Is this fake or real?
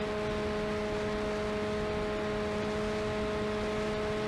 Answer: real